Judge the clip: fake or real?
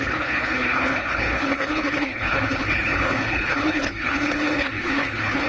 fake